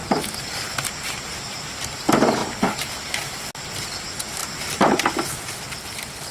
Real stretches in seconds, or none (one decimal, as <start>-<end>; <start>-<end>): 0.9-2.4; 3.7-4.4; 5.0-6.3